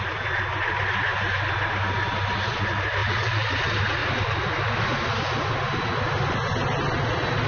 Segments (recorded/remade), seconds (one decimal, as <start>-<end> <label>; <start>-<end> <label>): 0.0-3.0 recorded; 3.0-3.6 remade; 3.6-7.5 recorded